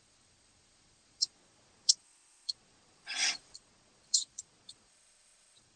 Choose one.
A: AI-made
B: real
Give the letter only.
A